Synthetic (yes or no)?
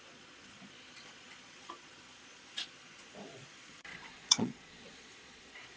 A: yes